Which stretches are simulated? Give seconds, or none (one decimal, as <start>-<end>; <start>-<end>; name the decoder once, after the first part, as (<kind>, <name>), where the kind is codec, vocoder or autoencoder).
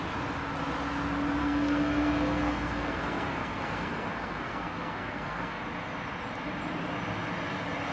1.4-5.6 (codec, SNAC)